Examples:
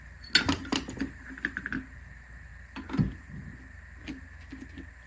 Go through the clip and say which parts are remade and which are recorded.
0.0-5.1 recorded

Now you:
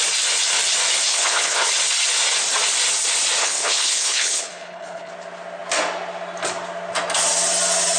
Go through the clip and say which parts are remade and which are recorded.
0.0-1.1 recorded; 1.1-1.7 remade; 1.7-3.4 recorded; 3.4-5.1 remade; 5.1-8.0 recorded

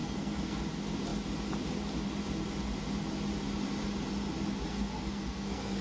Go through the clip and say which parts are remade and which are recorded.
0.0-0.6 remade; 0.6-4.7 recorded; 4.7-5.8 remade

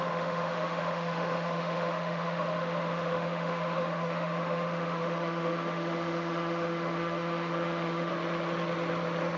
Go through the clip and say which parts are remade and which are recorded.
0.0-8.1 remade; 8.1-9.4 recorded